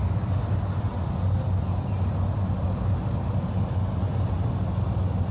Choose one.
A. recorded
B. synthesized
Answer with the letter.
A